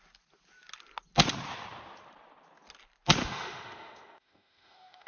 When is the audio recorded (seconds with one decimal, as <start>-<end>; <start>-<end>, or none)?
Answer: 0.0-3.2

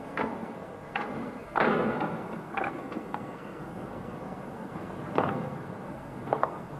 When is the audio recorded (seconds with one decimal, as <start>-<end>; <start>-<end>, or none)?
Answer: none

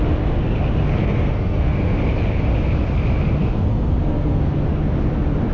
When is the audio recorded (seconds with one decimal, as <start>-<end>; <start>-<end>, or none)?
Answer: 0.0-1.0; 2.0-3.4; 4.4-5.5

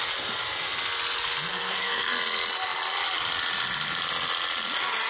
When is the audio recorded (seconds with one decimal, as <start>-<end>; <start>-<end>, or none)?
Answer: 0.0-1.5; 2.1-5.1